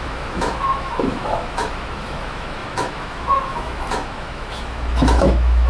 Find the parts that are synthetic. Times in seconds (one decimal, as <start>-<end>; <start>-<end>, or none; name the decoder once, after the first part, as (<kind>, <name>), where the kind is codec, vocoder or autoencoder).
0.0-5.7 (autoencoder, DAC-VAE)